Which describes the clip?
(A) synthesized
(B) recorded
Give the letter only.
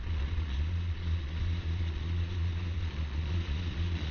A